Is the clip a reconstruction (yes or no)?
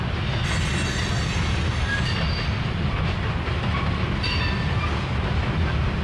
no